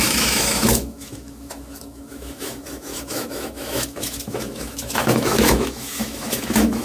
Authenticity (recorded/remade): remade